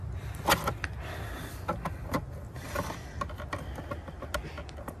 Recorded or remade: recorded